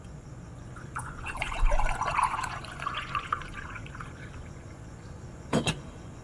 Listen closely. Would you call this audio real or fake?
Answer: fake